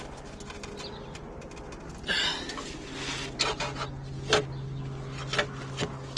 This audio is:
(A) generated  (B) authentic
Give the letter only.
B